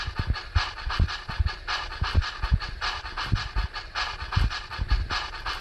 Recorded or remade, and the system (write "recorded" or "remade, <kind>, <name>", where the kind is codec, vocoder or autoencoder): recorded